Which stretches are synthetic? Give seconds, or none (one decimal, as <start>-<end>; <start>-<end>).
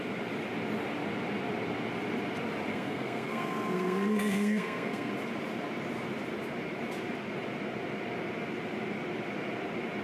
2.7-5.1